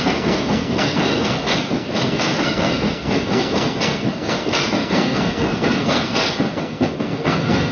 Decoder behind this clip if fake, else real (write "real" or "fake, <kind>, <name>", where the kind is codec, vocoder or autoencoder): fake, codec, SNAC